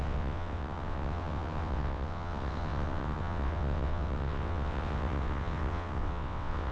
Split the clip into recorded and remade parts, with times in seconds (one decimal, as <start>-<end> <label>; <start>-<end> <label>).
0.0-6.7 remade